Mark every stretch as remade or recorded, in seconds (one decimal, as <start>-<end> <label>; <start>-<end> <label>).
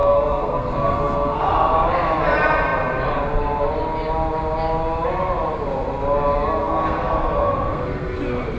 0.0-1.5 remade; 1.5-6.6 recorded; 6.6-8.2 remade; 8.2-8.6 recorded